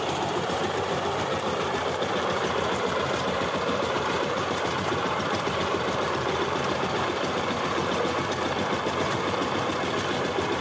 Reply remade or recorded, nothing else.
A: remade